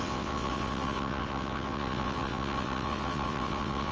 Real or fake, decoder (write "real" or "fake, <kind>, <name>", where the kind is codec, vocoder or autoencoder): fake, vocoder, WaveNeXt